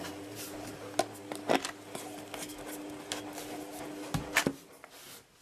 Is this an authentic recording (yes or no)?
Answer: yes